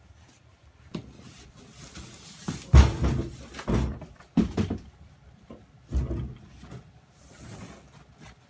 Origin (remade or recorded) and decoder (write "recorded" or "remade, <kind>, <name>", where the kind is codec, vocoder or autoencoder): recorded